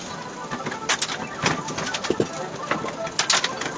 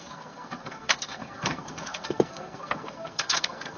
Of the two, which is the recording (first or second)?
first